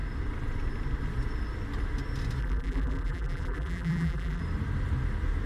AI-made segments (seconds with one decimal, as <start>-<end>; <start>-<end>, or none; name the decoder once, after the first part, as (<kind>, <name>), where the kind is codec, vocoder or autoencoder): 2.4-4.4 (vocoder, BigVGAN v2)

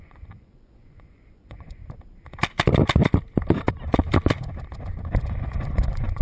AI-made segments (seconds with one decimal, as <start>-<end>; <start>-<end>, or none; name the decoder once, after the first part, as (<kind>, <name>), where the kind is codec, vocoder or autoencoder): 0.0-1.8 (vocoder, Vocos); 5.2-6.2

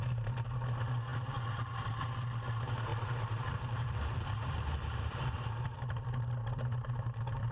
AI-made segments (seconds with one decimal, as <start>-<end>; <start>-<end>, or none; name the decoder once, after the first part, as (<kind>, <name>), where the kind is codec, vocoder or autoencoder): 2.9-5.5 (vocoder, BigVGAN v2)

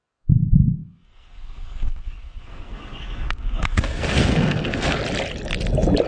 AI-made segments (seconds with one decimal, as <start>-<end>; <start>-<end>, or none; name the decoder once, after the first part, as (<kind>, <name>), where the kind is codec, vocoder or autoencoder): 0.0-5.0 (codec, SNAC)

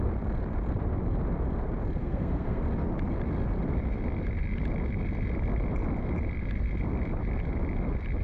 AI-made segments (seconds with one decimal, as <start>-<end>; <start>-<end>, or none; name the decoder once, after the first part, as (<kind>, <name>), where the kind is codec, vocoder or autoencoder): 2.0-2.6 (codec, SNAC)

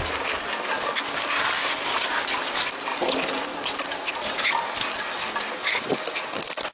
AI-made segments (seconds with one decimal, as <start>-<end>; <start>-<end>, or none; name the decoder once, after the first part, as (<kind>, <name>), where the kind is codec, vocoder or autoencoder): none

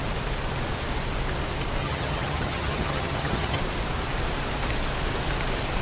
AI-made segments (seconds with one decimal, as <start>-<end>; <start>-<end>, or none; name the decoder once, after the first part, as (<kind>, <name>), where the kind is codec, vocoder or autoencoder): 1.8-3.6 (vocoder, HiFi-GAN)